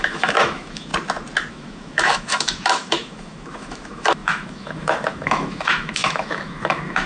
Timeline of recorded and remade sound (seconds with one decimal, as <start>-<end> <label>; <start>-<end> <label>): 0.0-0.9 remade; 0.9-1.5 recorded; 1.5-7.1 remade